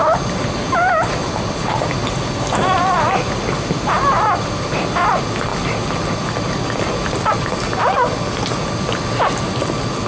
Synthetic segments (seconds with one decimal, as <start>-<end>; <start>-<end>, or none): none